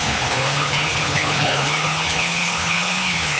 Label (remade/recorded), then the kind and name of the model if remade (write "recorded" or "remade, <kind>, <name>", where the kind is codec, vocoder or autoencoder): remade, codec, HILCodec